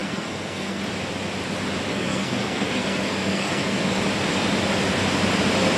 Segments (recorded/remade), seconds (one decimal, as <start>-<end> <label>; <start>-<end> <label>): 0.0-0.8 remade; 0.8-1.9 recorded; 1.9-4.0 remade; 4.0-5.8 recorded